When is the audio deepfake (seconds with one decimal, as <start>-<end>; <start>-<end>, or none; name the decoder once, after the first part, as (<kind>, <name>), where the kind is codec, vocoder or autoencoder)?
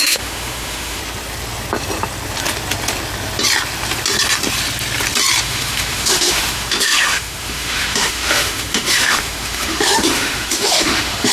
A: 0.0-1.0 (autoencoder, DAC-VAE); 5.4-11.3